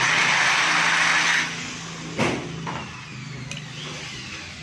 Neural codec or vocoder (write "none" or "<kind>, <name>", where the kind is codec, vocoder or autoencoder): none